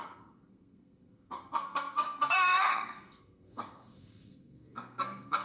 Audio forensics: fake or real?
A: fake